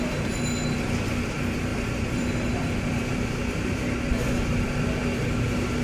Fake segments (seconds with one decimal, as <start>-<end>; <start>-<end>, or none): 1.7-4.0